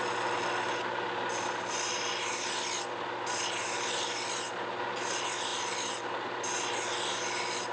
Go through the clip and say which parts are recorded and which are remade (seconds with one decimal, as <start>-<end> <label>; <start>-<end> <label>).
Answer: 0.0-7.7 recorded